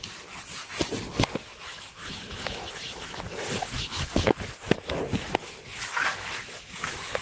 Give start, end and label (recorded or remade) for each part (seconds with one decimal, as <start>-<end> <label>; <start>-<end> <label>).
0.0-1.4 recorded; 1.4-3.2 remade; 3.2-3.6 recorded; 3.6-4.6 remade; 4.6-6.1 recorded; 6.1-7.2 remade